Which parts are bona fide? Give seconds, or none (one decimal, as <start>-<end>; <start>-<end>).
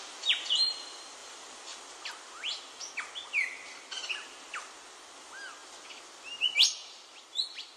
0.0-5.6